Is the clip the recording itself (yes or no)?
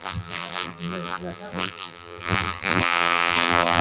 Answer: no